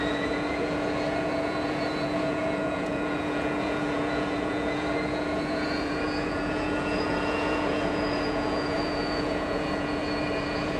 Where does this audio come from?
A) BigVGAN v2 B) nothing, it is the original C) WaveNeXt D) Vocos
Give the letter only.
D